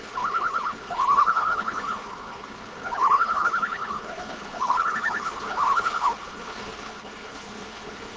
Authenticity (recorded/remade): remade